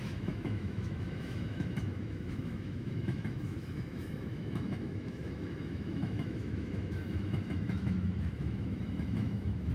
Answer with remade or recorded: remade